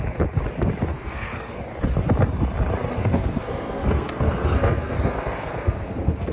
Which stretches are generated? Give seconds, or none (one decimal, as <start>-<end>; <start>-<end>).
0.9-1.6; 3.0-6.3